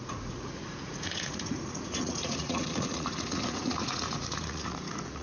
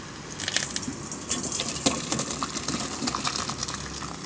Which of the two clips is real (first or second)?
second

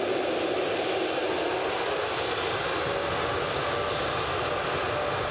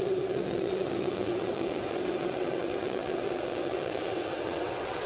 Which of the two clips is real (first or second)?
first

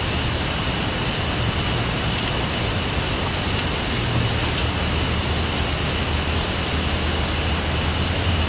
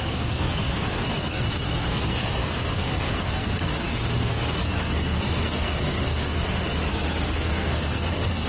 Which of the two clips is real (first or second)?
first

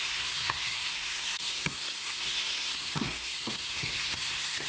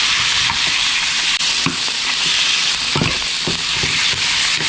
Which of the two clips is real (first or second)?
second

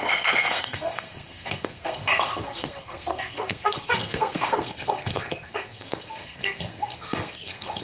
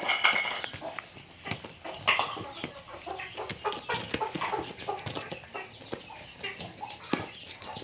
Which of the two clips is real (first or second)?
second